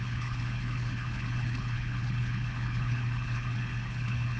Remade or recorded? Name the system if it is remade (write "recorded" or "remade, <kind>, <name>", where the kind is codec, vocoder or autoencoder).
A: remade, codec, HILCodec